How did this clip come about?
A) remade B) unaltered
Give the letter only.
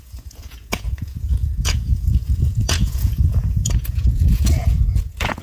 A